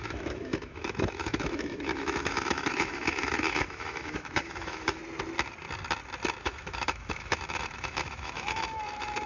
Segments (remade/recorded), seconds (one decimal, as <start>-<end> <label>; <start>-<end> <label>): 0.0-5.0 remade; 5.0-6.4 recorded; 6.4-9.3 remade